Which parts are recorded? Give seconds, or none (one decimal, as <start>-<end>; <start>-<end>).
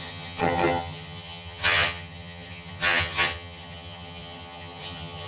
none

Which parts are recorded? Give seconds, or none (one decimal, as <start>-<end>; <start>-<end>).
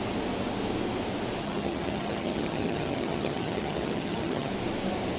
0.0-1.4; 4.5-5.2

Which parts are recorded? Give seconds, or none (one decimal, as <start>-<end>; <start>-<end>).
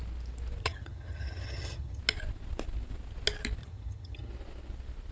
0.0-0.6; 2.0-3.6; 4.3-5.1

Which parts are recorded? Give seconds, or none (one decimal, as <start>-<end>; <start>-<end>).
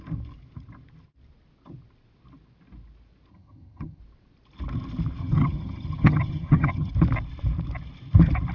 0.0-3.3; 4.0-5.2; 6.9-8.5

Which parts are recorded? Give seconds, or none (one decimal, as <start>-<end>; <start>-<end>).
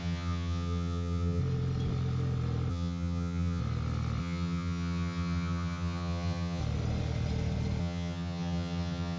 1.4-2.7; 3.6-4.2; 6.6-7.8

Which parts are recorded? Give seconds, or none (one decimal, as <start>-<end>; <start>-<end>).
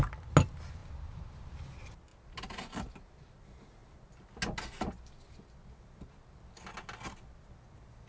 0.0-8.1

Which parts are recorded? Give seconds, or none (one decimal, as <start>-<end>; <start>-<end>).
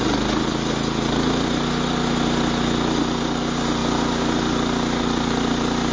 0.0-5.9